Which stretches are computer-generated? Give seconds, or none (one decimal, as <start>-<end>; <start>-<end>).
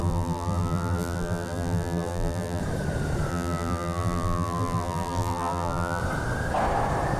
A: 0.0-2.6; 3.3-6.0